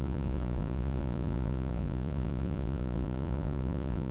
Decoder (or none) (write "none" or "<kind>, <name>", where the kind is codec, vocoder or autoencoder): vocoder, Vocos